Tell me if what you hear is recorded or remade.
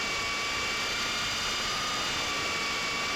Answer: recorded